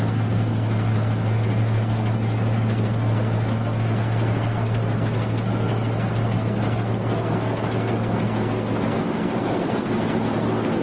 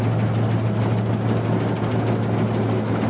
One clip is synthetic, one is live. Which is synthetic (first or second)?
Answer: first